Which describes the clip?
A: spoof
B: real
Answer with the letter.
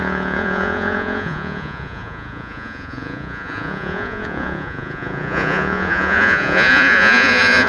A